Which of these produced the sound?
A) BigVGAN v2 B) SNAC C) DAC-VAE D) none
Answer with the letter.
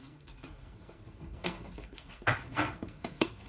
B